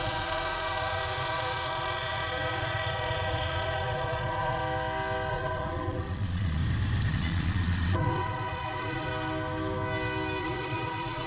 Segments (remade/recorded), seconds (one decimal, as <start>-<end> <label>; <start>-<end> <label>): 0.0-4.6 remade; 4.6-5.3 recorded; 5.3-6.6 remade; 6.6-7.1 recorded; 7.1-9.1 remade; 9.1-10.4 recorded; 10.4-11.3 remade